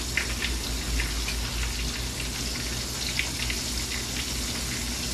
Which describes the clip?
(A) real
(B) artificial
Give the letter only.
A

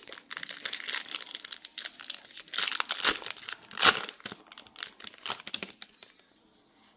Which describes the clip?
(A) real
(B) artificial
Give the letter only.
A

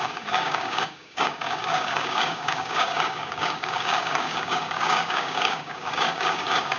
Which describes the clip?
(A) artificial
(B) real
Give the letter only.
A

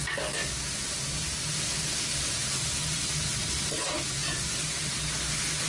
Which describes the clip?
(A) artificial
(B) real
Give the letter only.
B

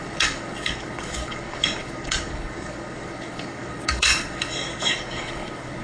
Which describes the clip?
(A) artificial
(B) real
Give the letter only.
A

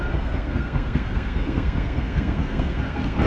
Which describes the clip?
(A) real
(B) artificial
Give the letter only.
B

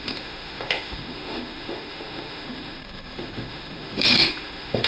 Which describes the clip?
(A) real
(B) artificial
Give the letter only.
B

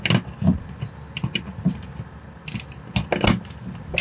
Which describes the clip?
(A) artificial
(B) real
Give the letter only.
B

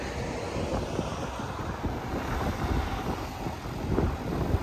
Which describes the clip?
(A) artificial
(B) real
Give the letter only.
B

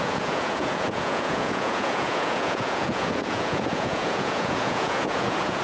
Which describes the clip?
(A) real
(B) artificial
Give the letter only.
B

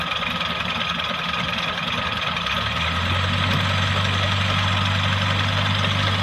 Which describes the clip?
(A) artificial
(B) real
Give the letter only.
B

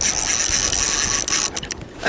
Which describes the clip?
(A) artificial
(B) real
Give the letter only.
B